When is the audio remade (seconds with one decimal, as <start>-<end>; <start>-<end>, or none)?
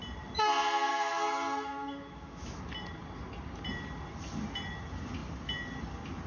0.9-2.6